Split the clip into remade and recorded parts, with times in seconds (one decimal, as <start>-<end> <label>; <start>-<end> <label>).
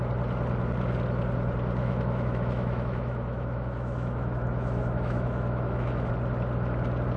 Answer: 0.0-1.8 recorded; 1.8-6.1 remade; 6.1-7.2 recorded